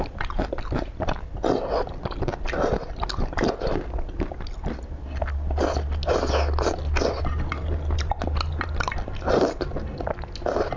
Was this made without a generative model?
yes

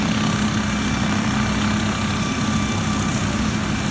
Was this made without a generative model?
yes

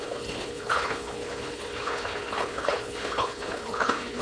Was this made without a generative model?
no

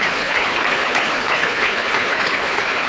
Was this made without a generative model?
no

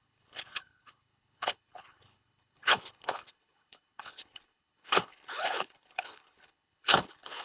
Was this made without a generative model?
no